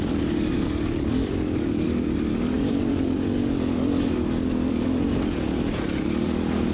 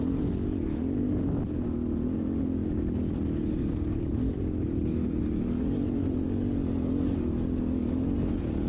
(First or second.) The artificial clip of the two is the first